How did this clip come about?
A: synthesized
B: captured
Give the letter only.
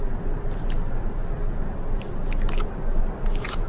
B